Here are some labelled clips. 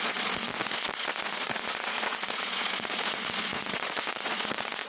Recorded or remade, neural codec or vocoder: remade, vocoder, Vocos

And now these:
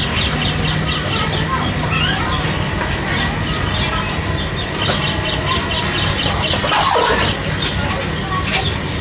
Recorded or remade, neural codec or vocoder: recorded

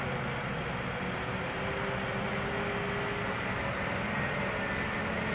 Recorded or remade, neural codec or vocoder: recorded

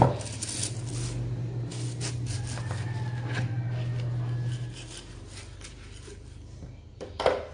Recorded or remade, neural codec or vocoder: recorded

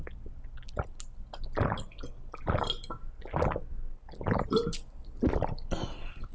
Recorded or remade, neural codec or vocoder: recorded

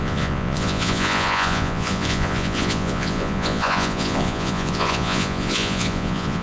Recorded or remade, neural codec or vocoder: remade, vocoder, Vocos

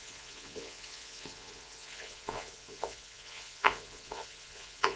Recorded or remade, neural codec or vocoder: remade, vocoder, Vocos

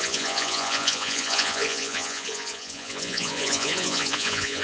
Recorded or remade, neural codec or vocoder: remade, vocoder, Vocos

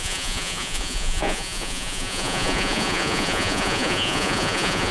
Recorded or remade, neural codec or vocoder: remade, vocoder, Vocos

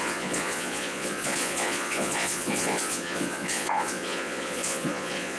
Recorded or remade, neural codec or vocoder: remade, vocoder, Vocos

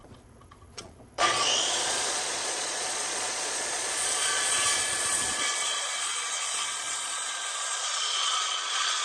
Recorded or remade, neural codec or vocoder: remade, vocoder, Vocos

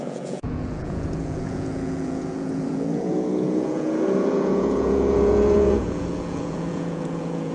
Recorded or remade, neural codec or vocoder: remade, vocoder, Vocos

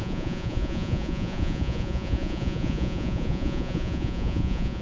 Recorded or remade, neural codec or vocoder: remade, vocoder, Vocos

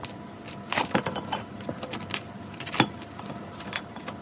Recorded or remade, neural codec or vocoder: recorded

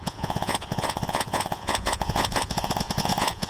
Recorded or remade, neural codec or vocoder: remade, vocoder, Vocos